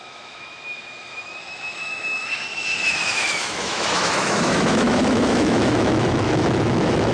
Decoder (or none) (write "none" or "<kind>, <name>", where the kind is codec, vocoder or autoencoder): autoencoder, DAC-VAE